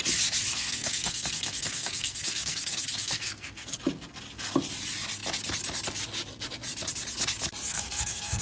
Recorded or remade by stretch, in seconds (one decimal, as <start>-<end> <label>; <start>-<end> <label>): 0.0-0.5 recorded; 0.5-3.8 remade; 3.8-7.7 recorded; 7.7-8.4 remade